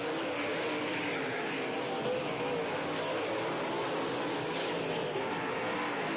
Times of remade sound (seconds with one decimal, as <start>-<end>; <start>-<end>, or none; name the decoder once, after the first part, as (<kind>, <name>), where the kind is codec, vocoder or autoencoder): 0.8-1.5 (codec, DAC); 4.3-4.9